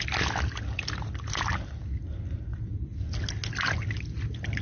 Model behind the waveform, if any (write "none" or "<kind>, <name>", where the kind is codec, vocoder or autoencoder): none